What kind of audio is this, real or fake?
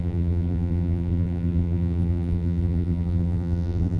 fake